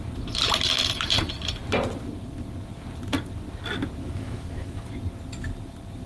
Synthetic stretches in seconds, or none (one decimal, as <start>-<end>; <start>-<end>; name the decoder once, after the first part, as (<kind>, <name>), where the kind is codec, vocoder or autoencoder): 4.0-4.9 (autoencoder, DAC-VAE)